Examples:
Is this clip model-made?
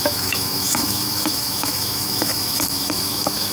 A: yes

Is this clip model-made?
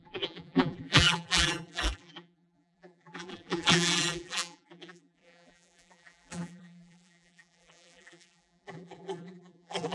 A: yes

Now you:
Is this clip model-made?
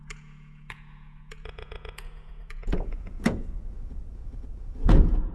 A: yes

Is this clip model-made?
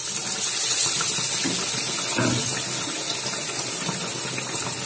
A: no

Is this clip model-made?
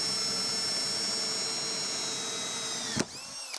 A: no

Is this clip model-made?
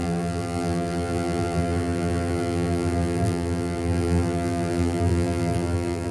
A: yes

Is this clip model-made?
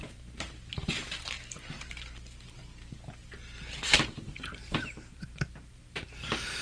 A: yes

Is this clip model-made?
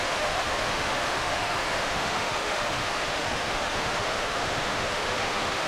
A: yes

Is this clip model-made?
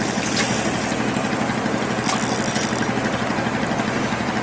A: no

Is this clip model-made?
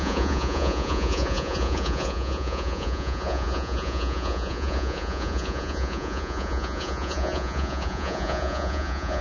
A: yes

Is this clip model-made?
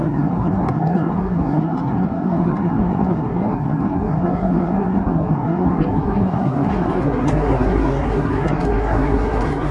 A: yes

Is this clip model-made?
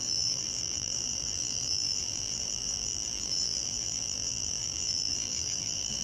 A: yes